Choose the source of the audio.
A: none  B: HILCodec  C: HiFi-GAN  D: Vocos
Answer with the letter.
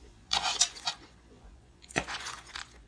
D